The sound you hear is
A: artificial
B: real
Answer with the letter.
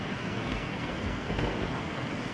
A